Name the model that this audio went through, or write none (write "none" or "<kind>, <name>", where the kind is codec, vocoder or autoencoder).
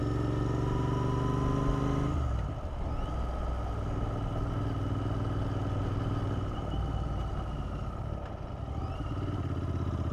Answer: none